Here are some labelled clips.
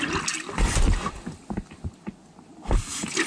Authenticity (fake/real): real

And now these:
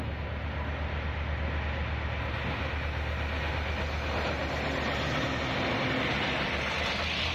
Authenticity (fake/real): real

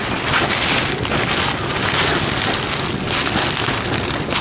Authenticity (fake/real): real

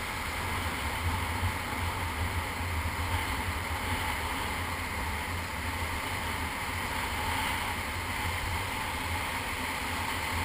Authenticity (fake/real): real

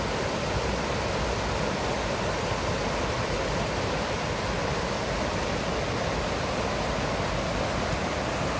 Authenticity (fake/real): real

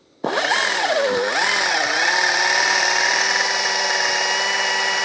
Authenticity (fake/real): fake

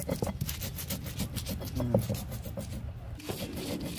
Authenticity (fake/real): real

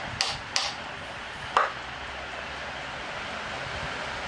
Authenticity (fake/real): real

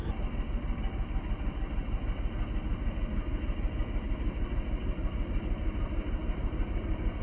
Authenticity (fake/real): real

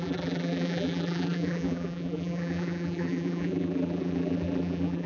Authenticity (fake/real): fake